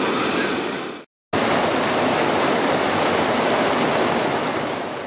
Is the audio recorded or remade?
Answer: recorded